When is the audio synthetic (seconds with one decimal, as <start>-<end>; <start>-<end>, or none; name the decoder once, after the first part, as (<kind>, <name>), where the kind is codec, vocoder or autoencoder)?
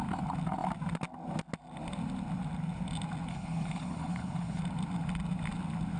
3.3-4.6 (codec, HILCodec)